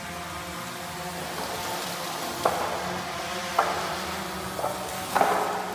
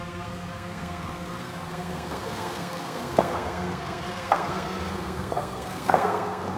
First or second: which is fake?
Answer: second